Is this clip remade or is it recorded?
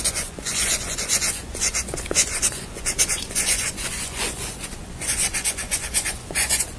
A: remade